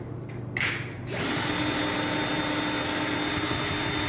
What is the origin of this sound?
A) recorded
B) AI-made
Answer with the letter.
A